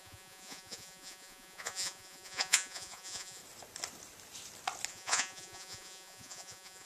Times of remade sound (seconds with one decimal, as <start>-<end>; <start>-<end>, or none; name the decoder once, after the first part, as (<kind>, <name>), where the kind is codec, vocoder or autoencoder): 0.0-3.4 (vocoder, Vocos); 4.9-6.9